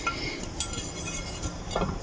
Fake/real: real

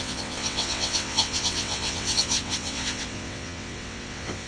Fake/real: fake